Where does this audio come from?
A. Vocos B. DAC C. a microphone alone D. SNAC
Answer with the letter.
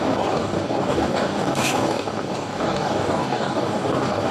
B